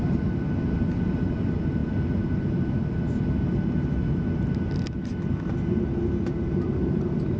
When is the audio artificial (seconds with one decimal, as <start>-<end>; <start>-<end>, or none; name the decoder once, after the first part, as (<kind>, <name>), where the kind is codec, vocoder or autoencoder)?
none